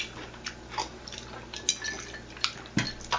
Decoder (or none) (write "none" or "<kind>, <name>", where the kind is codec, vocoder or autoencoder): none